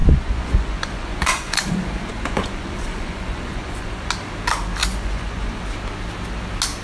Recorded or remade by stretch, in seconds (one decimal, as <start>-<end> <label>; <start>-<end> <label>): 0.0-4.1 remade; 4.1-4.8 recorded; 4.8-5.6 remade; 5.6-6.8 recorded